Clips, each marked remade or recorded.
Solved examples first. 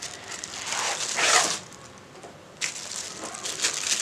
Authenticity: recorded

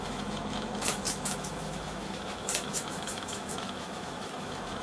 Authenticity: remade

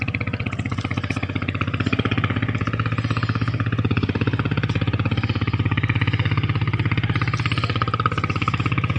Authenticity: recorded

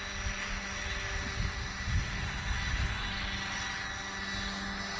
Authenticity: recorded